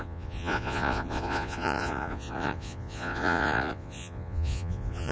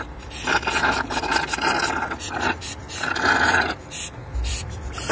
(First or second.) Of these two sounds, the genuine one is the second